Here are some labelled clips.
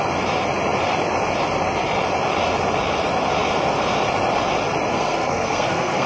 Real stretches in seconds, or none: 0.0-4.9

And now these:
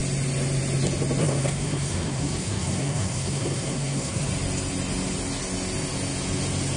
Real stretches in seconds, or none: 0.0-1.2; 4.3-6.8